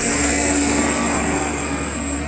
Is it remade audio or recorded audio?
remade